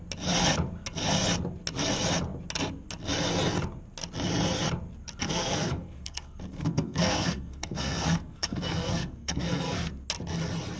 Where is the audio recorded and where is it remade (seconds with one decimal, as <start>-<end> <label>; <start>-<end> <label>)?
0.0-5.2 recorded; 5.2-9.9 remade; 9.9-10.8 recorded

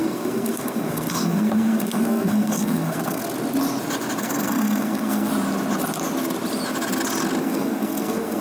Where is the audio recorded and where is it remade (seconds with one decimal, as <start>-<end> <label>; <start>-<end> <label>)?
0.0-3.2 remade; 3.2-4.2 recorded; 4.2-5.3 remade; 5.3-7.4 recorded; 7.4-8.4 remade

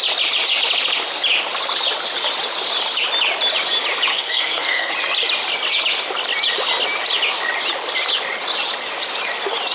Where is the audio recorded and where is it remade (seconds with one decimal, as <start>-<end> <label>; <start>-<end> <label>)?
0.0-4.1 recorded; 4.1-4.9 remade; 4.9-9.7 recorded

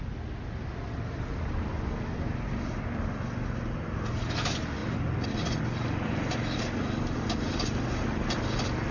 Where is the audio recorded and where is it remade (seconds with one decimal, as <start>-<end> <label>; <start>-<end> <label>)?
0.0-8.9 recorded

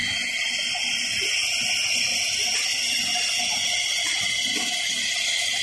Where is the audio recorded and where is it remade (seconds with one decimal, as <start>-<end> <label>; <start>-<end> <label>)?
0.0-5.6 recorded

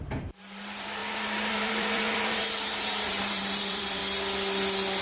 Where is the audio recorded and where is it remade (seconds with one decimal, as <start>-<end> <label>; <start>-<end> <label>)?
0.0-4.0 remade; 4.0-5.0 recorded

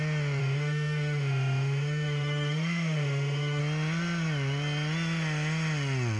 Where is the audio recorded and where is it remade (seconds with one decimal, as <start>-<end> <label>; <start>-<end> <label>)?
0.0-0.4 recorded; 0.4-3.6 remade; 3.6-6.2 recorded

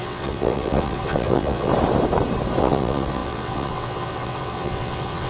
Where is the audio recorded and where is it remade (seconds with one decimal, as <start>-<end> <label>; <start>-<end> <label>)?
0.0-1.7 remade; 1.7-2.6 recorded; 2.6-5.3 remade